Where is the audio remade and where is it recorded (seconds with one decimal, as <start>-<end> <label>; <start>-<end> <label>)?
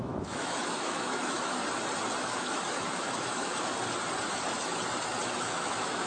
0.0-1.6 remade; 1.6-2.2 recorded; 2.2-3.7 remade; 3.7-5.3 recorded; 5.3-6.1 remade